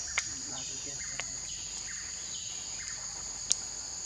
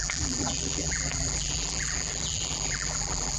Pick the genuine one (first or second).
first